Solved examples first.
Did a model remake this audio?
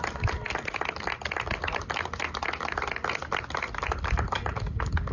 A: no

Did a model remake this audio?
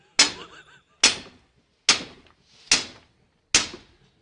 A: no